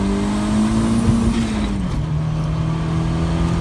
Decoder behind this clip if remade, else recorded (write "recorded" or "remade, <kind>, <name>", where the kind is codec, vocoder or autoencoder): recorded